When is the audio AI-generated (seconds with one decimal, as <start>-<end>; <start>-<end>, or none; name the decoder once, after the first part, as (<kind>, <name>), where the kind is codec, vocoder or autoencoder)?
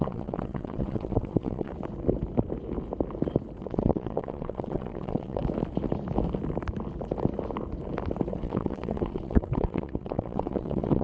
0.0-1.7 (vocoder, WaveNeXt); 3.6-5.4; 8.3-11.0